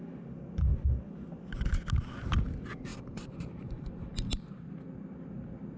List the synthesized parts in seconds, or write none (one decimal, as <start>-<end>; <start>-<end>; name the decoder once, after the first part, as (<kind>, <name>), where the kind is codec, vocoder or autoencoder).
2.9-4.3 (vocoder, BigVGAN v2)